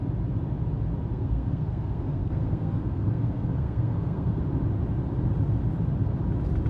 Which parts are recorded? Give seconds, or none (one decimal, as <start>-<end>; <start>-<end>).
0.0-1.1; 4.4-6.7